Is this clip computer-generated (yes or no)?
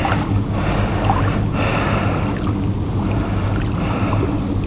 no